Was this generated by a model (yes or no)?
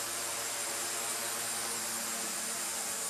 no